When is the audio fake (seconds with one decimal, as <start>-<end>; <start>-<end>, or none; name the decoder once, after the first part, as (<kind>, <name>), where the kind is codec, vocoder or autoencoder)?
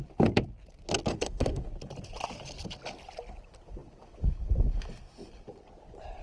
1.1-1.7 (autoencoder, DAC-VAE)